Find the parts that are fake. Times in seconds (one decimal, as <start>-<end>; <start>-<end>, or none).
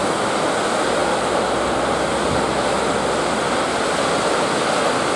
none